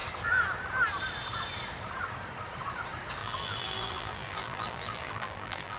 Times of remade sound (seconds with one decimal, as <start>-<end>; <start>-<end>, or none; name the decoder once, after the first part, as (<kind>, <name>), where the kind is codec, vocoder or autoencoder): 3.2-5.8 (vocoder, BigVGAN v2)